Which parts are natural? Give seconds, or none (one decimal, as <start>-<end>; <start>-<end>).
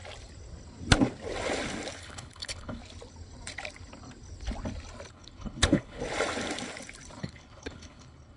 0.0-2.0; 2.8-5.1; 6.0-7.2